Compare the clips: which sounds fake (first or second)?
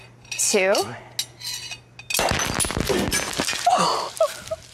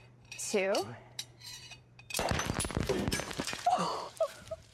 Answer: second